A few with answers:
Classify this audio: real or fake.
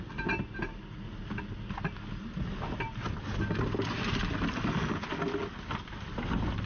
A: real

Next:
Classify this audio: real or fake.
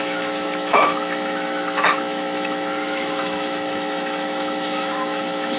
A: fake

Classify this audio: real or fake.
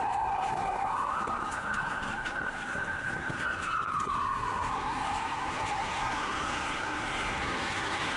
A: fake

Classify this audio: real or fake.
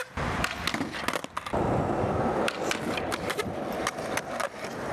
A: real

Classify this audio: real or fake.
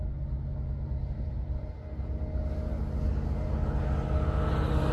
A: real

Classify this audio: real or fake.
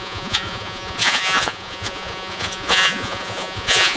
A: fake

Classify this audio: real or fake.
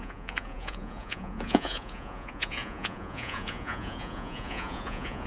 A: fake